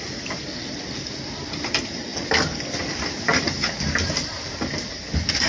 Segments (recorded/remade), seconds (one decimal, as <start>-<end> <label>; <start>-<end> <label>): 0.0-5.5 recorded